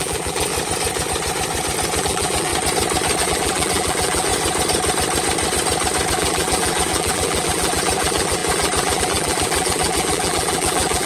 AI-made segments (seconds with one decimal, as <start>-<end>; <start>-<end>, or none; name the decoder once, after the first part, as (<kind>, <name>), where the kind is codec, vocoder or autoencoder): 0.0-0.5 (vocoder, BigVGAN v2); 2.0-2.5; 3.2-4.3; 6.1-11.1